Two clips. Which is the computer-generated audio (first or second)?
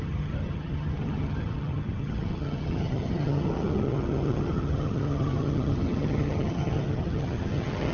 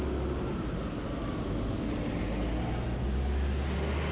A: first